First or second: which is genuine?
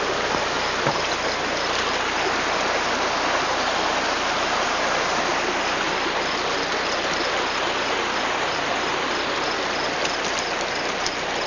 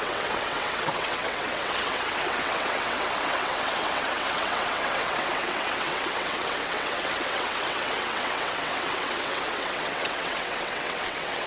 first